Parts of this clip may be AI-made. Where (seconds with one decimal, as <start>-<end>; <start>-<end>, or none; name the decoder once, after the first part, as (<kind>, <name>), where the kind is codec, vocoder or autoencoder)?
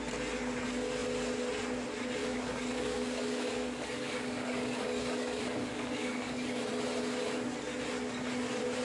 2.2-6.6 (codec, DAC)